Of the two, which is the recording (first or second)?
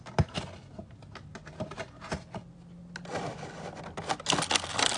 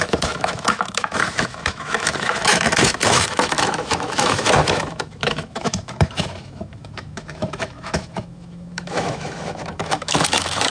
first